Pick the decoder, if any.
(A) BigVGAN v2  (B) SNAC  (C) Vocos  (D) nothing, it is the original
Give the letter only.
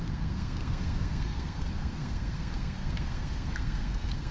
B